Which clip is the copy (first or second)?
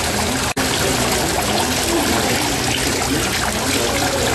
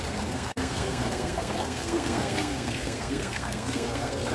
second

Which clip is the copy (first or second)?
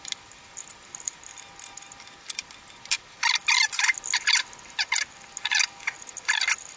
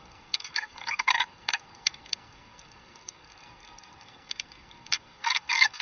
second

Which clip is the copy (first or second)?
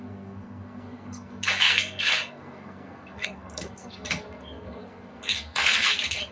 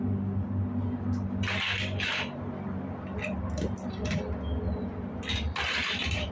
first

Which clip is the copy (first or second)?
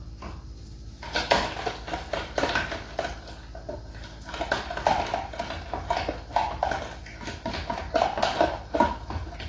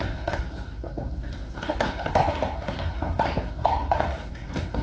second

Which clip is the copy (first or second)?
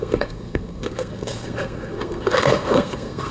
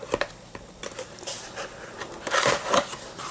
first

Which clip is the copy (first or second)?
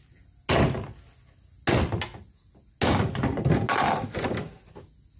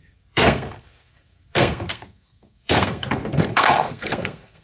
second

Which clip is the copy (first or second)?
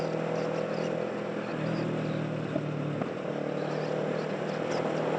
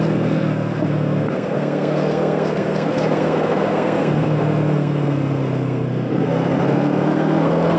second